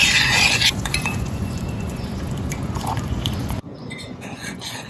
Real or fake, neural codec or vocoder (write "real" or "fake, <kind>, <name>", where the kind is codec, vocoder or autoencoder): fake, vocoder, Vocos